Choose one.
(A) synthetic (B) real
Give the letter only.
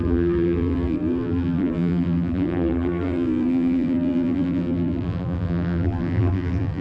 A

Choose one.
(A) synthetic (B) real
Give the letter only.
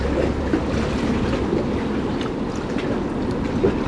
B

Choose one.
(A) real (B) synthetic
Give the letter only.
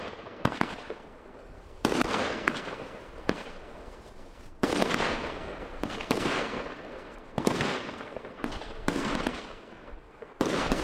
B